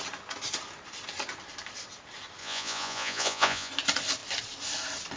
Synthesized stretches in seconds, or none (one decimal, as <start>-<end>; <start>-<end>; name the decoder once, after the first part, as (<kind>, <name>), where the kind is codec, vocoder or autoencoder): 2.4-3.7 (vocoder, Vocos)